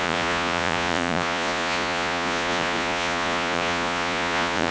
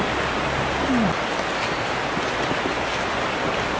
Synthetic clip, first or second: first